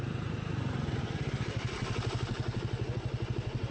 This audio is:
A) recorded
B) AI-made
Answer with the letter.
A